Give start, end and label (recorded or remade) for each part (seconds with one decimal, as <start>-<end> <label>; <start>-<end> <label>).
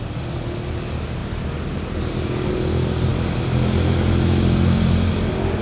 0.0-5.6 recorded